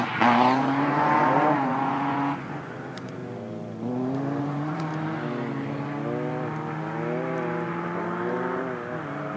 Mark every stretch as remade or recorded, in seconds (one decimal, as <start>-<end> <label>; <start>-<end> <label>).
0.0-3.2 remade; 3.2-4.4 recorded; 4.4-4.9 remade; 4.9-9.4 recorded

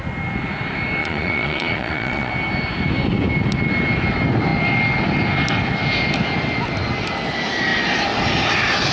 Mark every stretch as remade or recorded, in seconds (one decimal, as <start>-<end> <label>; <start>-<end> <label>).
0.0-1.0 recorded; 1.0-2.3 remade; 2.3-8.9 recorded